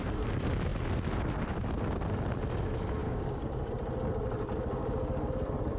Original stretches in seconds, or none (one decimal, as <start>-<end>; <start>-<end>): 0.0-3.0; 3.7-4.8; 5.3-5.8